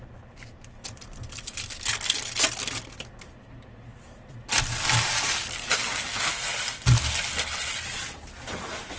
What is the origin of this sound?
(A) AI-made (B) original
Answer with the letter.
B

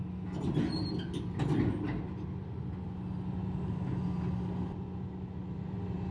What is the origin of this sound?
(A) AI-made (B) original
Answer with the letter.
B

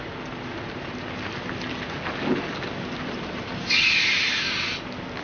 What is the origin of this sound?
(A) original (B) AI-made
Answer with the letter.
A